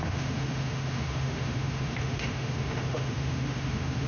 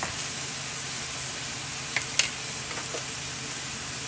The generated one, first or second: first